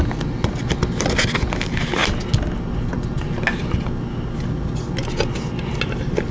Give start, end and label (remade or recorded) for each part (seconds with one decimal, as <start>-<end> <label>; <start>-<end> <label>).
0.0-6.3 recorded